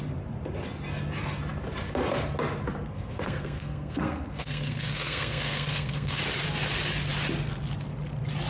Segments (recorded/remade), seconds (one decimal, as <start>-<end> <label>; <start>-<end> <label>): 0.0-2.9 recorded; 2.9-6.2 remade; 6.2-8.5 recorded